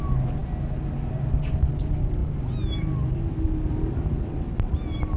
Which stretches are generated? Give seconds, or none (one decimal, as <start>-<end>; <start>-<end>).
none